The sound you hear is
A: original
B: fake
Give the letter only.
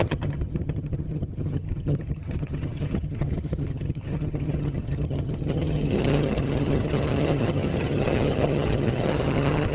B